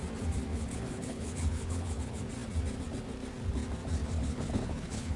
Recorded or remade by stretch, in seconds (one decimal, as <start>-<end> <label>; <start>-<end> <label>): 0.0-0.5 recorded; 0.5-2.3 remade; 2.3-4.2 recorded; 4.2-5.2 remade